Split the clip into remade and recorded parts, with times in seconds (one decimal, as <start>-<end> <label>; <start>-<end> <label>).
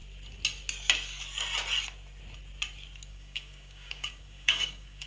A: 0.0-3.1 recorded; 3.1-5.1 remade